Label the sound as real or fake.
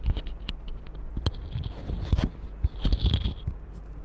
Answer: real